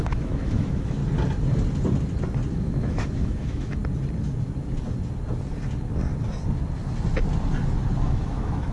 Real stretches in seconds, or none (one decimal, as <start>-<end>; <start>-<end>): 1.0-2.5; 3.8-8.0